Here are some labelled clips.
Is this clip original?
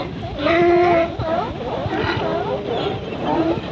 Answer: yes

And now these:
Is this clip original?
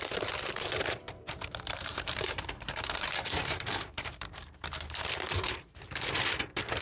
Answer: no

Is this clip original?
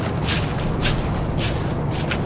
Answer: yes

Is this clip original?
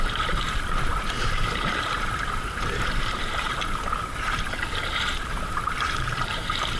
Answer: no